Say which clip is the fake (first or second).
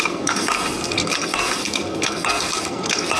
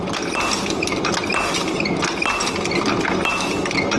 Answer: first